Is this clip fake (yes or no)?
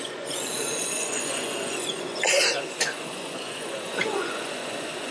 yes